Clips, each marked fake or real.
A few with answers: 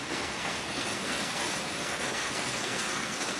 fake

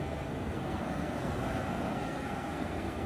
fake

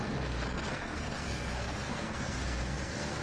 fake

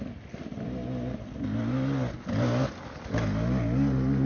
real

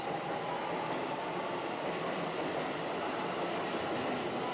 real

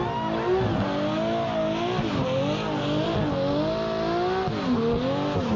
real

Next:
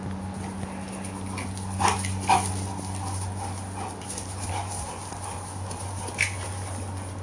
real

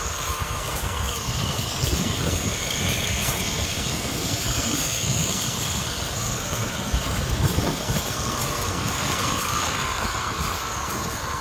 fake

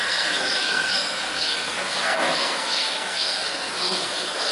fake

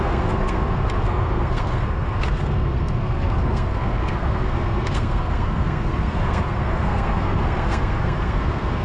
fake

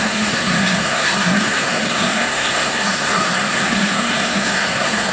fake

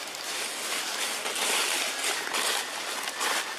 real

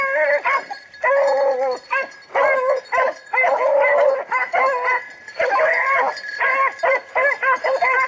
real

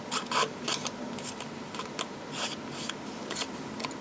real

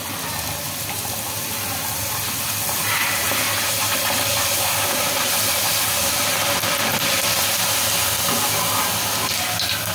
real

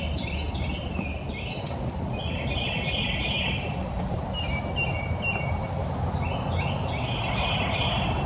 real